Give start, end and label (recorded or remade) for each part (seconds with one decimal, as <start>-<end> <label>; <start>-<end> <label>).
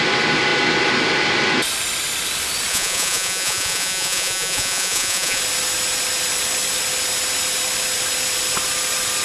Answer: 0.0-2.7 recorded; 2.7-5.4 remade; 5.4-9.2 recorded